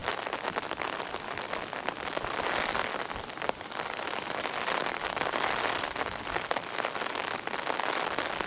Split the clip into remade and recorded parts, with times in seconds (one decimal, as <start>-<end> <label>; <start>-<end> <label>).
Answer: 0.0-8.5 recorded